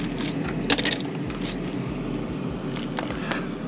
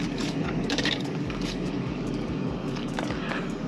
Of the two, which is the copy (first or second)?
second